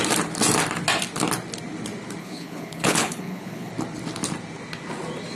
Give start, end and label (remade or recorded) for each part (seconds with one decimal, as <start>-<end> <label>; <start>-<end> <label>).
0.0-2.2 recorded; 2.2-3.7 remade; 3.7-5.4 recorded